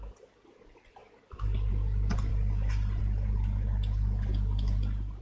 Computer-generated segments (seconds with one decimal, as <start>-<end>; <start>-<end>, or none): none